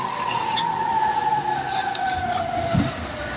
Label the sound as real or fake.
real